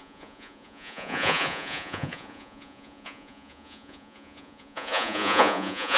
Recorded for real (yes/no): no